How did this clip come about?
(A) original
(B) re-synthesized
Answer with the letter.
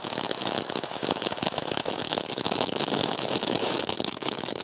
B